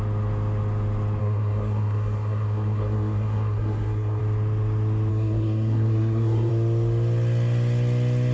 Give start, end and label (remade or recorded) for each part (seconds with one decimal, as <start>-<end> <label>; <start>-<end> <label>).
0.0-1.2 recorded; 1.2-4.2 remade; 4.2-5.1 recorded; 5.1-6.5 remade; 6.5-8.3 recorded